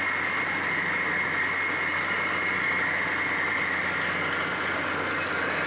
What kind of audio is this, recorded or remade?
recorded